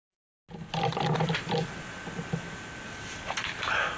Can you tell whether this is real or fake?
real